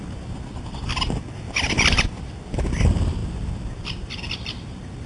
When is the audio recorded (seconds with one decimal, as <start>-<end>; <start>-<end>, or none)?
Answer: none